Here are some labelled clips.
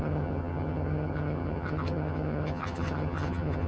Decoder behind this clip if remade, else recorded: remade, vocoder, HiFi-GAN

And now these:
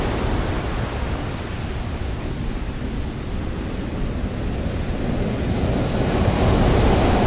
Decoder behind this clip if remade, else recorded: recorded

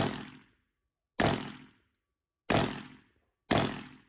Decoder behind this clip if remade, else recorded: recorded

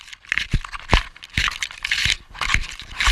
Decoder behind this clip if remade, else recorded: recorded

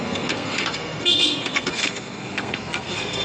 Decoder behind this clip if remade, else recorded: remade, codec, SNAC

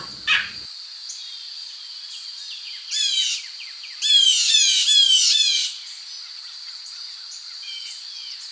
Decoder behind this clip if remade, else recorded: recorded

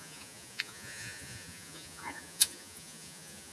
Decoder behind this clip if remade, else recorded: remade, vocoder, Vocos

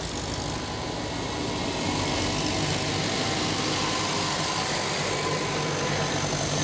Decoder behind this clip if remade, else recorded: recorded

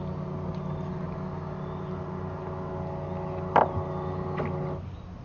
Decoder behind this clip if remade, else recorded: recorded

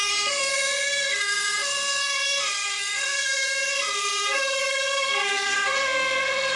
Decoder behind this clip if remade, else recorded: remade, codec, SNAC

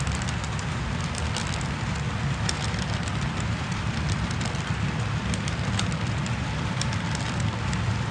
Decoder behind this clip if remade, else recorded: remade, vocoder, BigVGAN v2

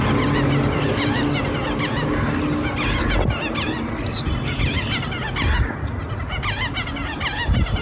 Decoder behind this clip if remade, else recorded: recorded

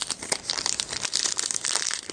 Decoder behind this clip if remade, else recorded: recorded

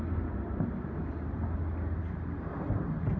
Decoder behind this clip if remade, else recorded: recorded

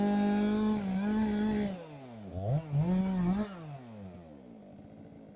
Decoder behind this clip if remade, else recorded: recorded